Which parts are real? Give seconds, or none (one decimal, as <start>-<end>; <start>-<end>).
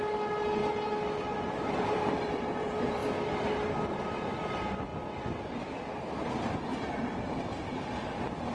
0.6-1.2; 3.0-3.9; 4.9-6.9